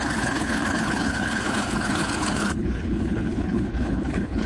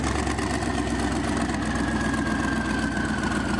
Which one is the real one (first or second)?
second